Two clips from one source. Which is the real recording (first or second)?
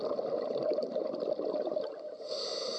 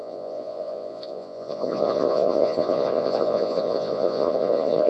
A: first